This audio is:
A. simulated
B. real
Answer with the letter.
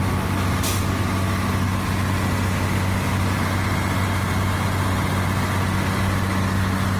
B